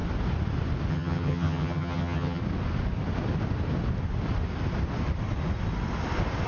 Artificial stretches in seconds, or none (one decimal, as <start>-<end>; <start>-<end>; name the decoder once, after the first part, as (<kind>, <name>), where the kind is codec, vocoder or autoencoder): 0.9-2.4 (vocoder, HiFi-GAN)